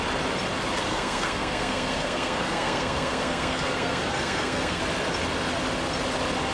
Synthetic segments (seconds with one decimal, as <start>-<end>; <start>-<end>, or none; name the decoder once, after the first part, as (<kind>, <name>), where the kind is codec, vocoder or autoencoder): 0.9-4.8 (codec, SNAC)